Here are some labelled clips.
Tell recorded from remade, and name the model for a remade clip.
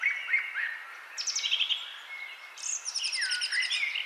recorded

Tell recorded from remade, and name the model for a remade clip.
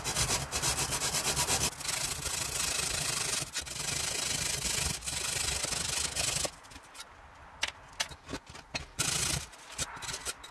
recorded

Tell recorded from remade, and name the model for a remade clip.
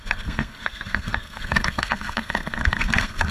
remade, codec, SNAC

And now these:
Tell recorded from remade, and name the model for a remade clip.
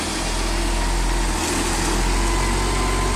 recorded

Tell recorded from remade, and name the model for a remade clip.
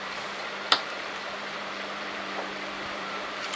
remade, vocoder, BigVGAN v2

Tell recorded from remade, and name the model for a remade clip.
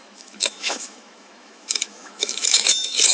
remade, autoencoder, DAC-VAE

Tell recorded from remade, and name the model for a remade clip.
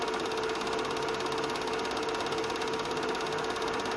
recorded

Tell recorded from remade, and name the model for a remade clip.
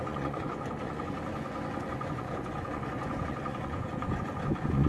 remade, vocoder, Vocos